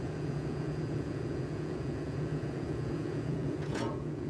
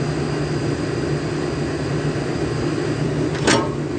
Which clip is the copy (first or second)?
first